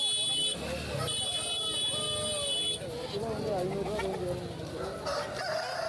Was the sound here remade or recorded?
recorded